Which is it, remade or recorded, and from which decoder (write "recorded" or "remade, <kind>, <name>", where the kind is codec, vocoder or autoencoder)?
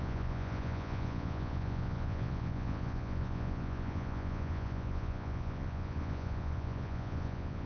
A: remade, vocoder, Vocos